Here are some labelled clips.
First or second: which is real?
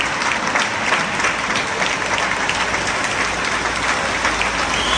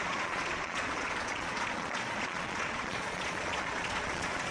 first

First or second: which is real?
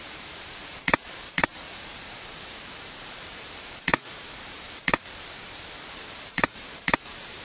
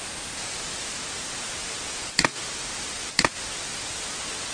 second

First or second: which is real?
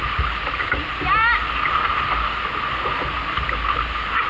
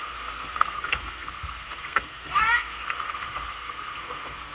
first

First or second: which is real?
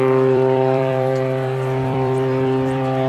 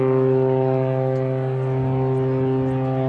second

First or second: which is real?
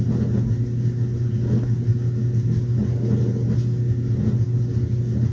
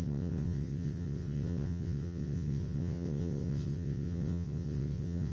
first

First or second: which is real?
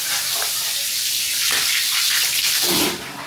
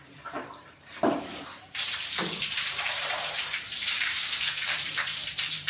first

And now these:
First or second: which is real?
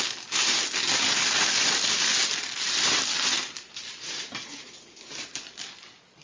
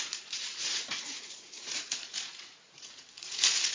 first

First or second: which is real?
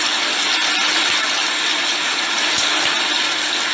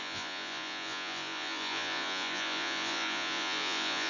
first